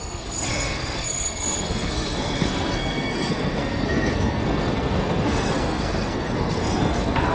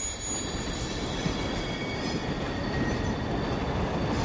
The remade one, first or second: first